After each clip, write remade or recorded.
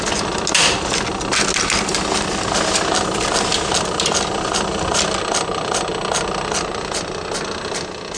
recorded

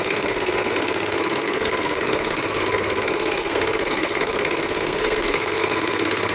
remade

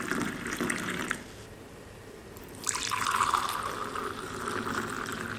recorded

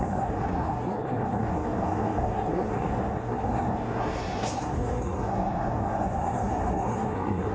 remade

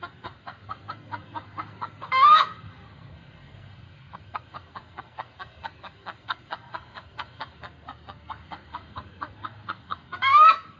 remade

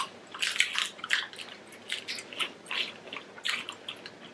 recorded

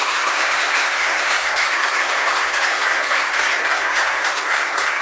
remade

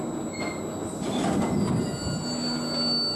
recorded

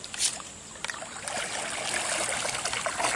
recorded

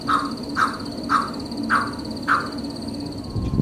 recorded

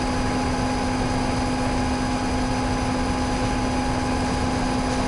recorded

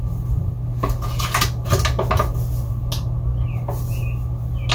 recorded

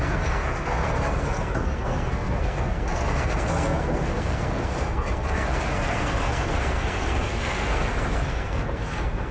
remade